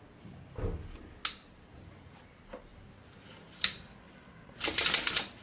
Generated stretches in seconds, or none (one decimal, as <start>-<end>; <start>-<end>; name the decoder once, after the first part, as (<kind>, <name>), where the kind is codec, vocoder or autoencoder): none